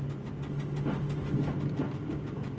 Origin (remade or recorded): recorded